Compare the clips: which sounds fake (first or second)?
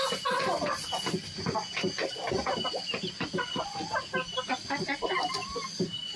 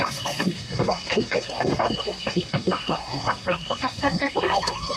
second